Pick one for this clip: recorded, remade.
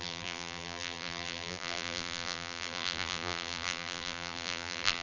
remade